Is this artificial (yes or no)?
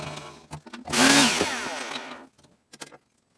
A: no